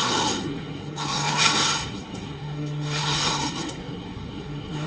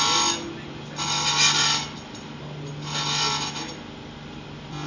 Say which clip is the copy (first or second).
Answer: first